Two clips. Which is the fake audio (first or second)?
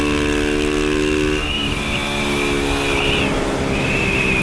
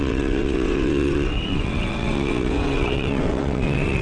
second